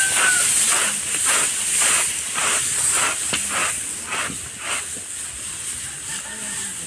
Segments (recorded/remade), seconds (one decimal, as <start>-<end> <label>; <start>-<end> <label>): 0.0-6.9 recorded